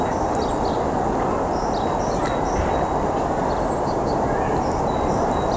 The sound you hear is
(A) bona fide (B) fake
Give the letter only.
A